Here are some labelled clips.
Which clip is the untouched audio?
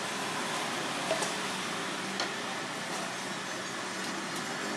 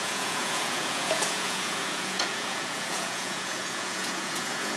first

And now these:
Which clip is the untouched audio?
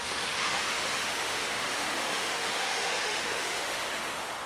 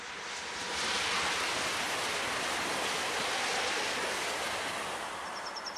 second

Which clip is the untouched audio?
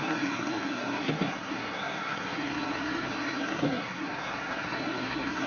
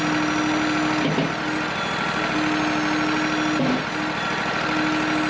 second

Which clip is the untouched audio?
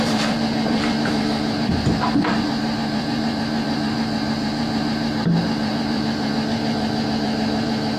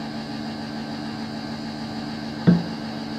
second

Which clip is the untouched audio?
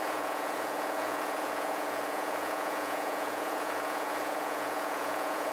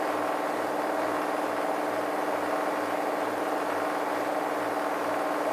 second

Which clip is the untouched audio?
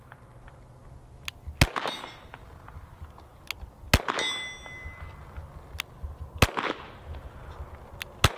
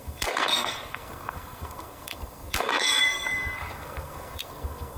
first